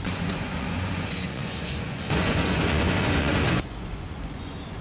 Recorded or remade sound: remade